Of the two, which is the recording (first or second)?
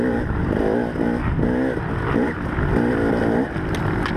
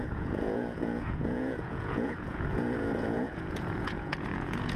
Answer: first